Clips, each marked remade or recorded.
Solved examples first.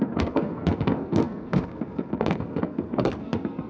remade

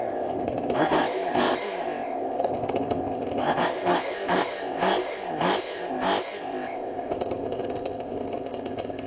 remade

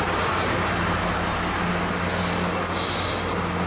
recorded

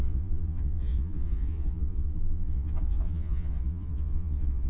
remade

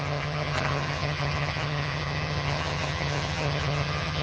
remade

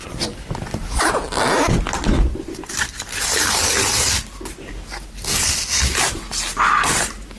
recorded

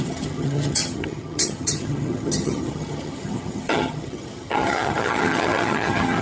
remade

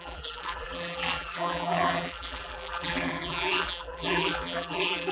remade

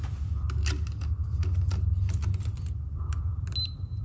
recorded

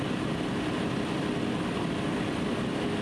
recorded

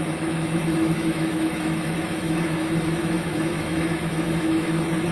remade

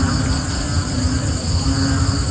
recorded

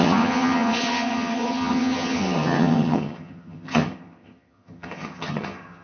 remade